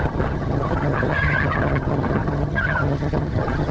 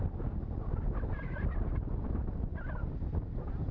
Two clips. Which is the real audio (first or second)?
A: second